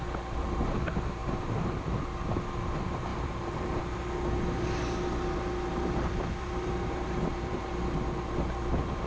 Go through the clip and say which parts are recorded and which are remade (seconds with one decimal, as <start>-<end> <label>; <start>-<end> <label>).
0.0-1.2 recorded; 1.2-1.8 remade; 1.8-3.1 recorded; 3.1-3.8 remade; 3.8-5.7 recorded; 5.7-7.7 remade; 7.7-9.1 recorded